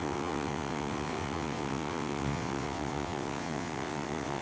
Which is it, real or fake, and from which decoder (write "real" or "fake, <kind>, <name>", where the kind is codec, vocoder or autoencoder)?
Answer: fake, vocoder, WaveNeXt